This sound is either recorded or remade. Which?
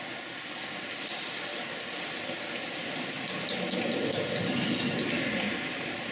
recorded